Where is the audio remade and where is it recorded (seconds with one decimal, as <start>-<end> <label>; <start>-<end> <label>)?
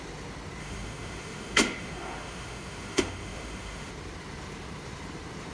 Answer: 0.0-0.6 recorded; 0.6-3.9 remade; 3.9-5.5 recorded